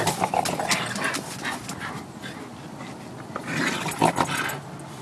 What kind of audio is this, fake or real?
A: real